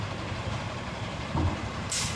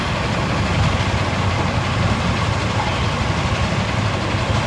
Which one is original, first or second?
second